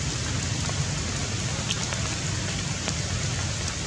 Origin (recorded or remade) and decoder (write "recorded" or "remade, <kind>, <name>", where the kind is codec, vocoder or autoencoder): recorded